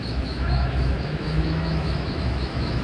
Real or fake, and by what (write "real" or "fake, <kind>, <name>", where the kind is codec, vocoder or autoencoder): fake, autoencoder, DAC-VAE